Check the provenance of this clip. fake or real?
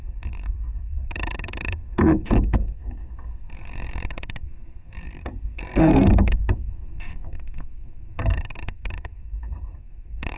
fake